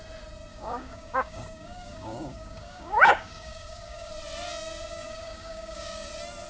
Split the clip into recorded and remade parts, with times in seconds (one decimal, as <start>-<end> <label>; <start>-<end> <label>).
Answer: 0.0-0.5 recorded; 0.5-4.1 remade; 4.1-4.9 recorded; 4.9-6.1 remade; 6.1-6.5 recorded